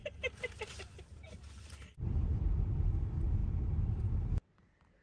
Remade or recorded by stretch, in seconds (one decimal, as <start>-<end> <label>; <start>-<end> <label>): 0.0-0.7 remade; 0.7-1.1 recorded; 1.1-2.8 remade; 2.8-5.0 recorded